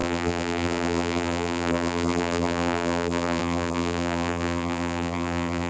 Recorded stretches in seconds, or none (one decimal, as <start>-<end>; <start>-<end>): none

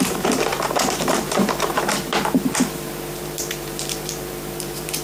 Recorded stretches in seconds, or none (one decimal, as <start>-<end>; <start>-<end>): none

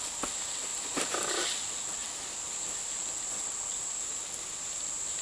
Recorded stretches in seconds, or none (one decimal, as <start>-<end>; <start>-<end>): 0.0-0.7; 1.3-2.0; 4.5-5.2

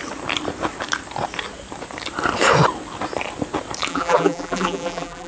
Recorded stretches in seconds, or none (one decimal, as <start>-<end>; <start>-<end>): 0.0-3.9

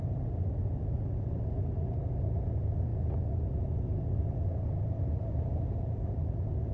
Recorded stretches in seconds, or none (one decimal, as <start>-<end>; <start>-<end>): 2.9-3.6

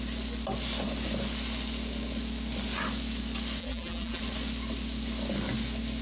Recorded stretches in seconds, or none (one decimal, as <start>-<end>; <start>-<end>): 0.0-3.6; 4.2-6.0

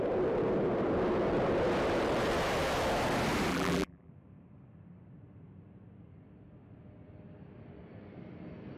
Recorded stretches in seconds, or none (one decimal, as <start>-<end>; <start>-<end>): 0.0-3.5; 4.1-8.8